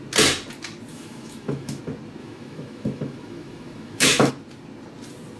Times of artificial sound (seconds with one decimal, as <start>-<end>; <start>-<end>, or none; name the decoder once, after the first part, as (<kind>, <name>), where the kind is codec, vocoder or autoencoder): 0.9-1.8 (autoencoder, DAC-VAE); 2.2-4.3